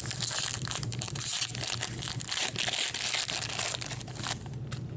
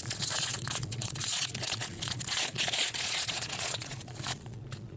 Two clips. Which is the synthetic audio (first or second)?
second